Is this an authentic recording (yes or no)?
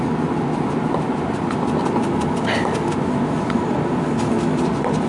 yes